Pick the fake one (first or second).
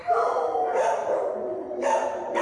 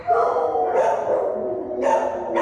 first